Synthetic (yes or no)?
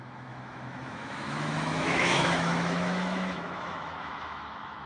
yes